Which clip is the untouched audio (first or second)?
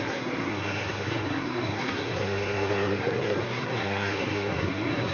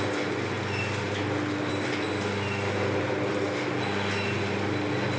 second